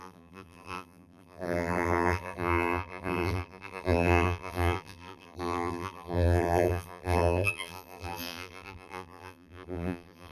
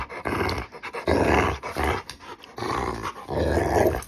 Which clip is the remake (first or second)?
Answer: first